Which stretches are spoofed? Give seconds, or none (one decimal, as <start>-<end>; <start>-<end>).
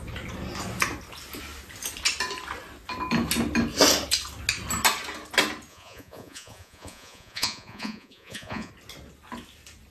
5.7-8.7